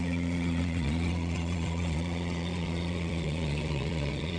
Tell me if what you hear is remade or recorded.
remade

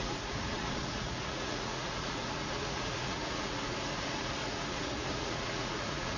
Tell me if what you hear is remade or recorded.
remade